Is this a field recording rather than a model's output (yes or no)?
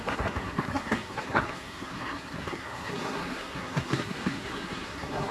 no